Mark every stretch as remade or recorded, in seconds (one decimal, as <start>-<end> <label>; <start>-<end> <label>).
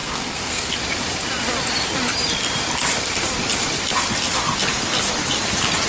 0.0-0.7 remade; 0.7-5.9 recorded